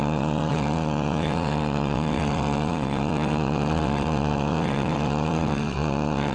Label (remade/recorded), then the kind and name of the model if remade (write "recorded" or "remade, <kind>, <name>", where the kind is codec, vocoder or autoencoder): remade, vocoder, WaveNeXt